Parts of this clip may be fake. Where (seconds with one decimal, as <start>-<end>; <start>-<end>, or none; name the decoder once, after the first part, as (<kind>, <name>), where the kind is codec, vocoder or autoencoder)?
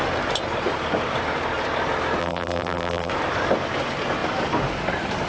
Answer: 2.2-3.1 (vocoder, BigVGAN v2)